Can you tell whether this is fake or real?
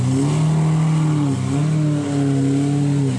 real